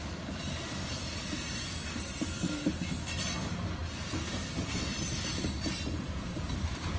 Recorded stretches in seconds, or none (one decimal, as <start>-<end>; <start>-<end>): 0.0-7.0